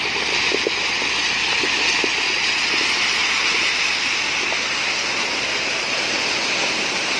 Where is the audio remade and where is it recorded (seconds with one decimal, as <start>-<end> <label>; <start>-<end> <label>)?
0.0-7.2 recorded